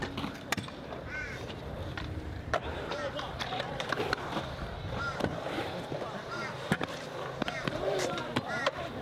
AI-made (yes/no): yes